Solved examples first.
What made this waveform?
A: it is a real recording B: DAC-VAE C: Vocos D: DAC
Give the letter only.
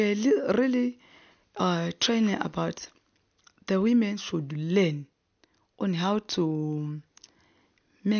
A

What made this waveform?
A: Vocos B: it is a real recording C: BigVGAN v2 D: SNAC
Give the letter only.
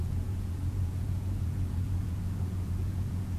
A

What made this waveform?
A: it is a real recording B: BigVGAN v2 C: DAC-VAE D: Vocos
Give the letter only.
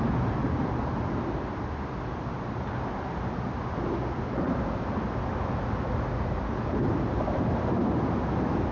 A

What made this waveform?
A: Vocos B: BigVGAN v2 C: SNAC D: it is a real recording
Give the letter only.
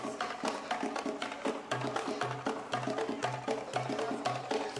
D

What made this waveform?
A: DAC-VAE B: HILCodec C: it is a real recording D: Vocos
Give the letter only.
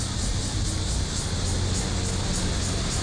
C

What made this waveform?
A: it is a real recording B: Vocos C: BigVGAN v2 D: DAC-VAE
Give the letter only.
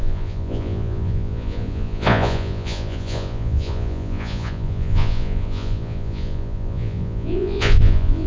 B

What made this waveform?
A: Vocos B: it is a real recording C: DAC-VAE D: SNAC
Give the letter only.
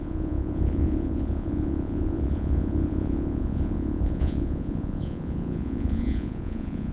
A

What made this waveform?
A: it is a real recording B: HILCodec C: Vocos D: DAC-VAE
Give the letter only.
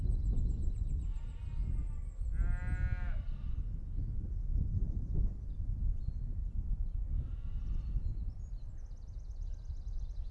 A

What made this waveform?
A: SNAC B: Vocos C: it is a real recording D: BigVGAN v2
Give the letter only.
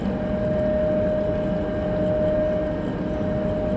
C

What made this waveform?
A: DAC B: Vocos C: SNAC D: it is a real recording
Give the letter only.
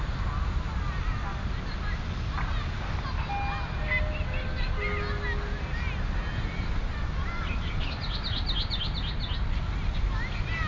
D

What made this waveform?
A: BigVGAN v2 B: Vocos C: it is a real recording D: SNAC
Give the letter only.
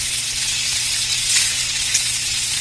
B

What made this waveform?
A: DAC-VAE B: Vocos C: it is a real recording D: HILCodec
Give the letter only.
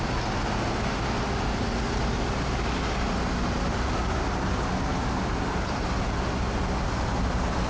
C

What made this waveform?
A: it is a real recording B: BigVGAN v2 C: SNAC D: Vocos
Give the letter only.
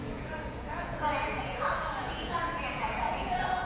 D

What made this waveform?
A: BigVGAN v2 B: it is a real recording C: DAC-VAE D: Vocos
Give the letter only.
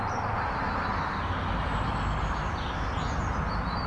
B